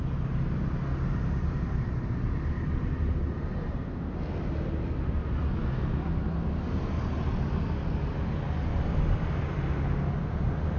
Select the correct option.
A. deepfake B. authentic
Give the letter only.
B